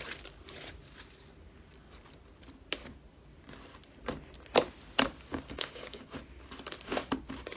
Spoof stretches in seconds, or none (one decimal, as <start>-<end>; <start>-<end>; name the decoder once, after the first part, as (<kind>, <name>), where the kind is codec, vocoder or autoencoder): 5.3-6.1 (codec, DAC)